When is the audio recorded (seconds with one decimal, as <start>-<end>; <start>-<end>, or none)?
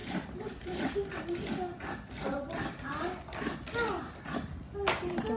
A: 0.9-5.4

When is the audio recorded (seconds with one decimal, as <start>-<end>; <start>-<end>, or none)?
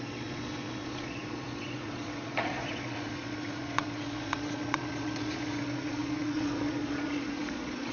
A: none